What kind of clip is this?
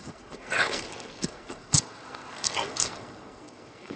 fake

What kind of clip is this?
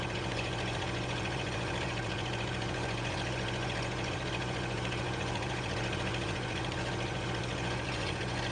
fake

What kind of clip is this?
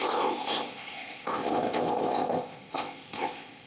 fake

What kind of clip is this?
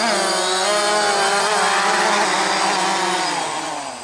real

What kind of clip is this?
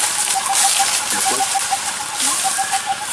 fake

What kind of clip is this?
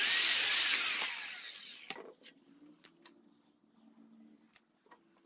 real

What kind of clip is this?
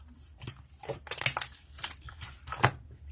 real